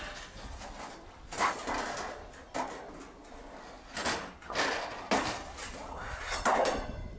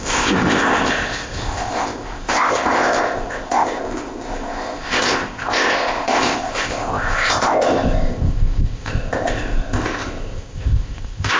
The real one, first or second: first